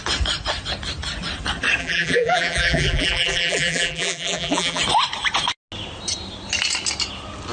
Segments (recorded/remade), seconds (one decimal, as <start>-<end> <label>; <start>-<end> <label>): 0.0-1.8 recorded; 1.8-4.8 remade; 4.8-7.5 recorded